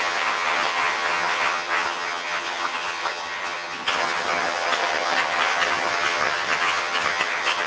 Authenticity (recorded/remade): remade